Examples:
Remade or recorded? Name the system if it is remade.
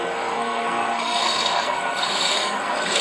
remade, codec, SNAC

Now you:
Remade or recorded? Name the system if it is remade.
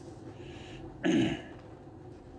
recorded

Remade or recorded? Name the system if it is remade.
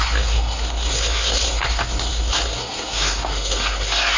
remade, codec, SNAC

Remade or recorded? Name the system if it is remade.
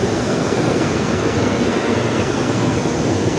remade, codec, SNAC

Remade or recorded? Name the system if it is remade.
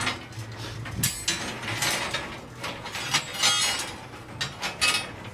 recorded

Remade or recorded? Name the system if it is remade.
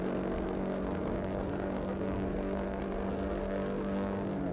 remade, codec, SNAC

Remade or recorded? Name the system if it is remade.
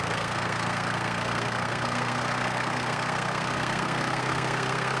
remade, codec, SNAC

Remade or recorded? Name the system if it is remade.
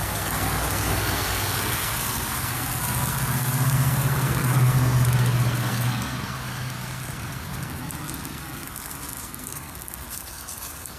remade, codec, SNAC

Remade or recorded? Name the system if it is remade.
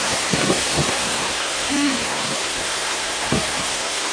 remade, codec, SNAC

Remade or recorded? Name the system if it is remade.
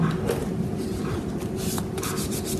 recorded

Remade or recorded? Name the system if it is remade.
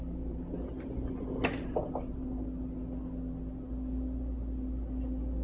recorded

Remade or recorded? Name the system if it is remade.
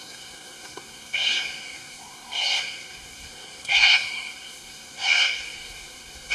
remade, codec, SNAC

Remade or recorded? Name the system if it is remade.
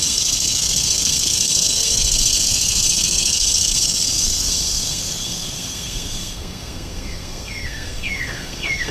remade, codec, SNAC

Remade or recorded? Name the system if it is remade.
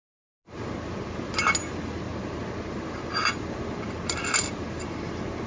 recorded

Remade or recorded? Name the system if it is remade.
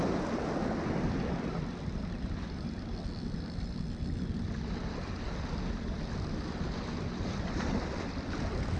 recorded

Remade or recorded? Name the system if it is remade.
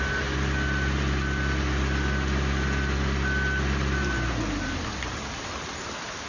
recorded